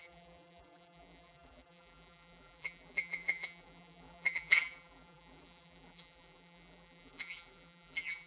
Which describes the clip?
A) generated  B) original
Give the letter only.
A